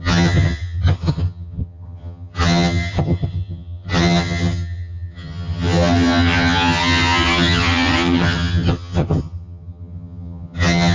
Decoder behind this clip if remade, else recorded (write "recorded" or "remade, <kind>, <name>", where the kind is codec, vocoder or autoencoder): remade, vocoder, HiFi-GAN